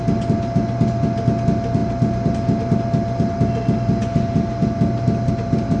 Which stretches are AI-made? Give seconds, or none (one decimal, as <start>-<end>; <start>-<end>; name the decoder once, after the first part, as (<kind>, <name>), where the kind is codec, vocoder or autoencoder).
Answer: none